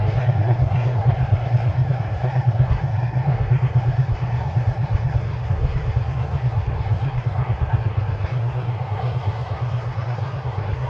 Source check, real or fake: fake